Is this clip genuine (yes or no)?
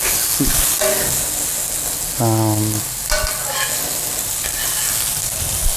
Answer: yes